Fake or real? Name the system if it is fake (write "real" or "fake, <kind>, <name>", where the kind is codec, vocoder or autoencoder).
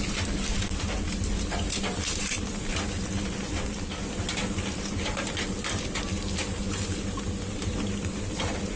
real